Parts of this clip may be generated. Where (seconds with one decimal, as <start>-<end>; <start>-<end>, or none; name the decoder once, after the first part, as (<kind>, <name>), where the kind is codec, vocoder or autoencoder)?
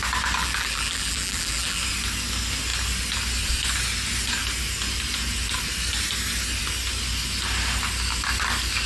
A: 0.4-1.8 (vocoder, BigVGAN v2)